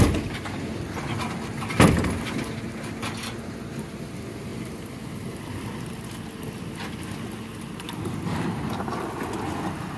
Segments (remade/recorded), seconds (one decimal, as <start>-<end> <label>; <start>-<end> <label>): 0.0-10.0 recorded